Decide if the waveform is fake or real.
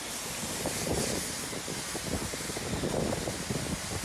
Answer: real